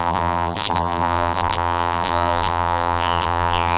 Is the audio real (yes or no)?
no